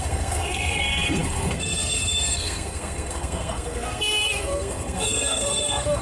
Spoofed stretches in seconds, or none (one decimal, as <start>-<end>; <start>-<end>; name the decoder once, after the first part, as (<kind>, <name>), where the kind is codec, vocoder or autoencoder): 0.0-6.0 (codec, SNAC)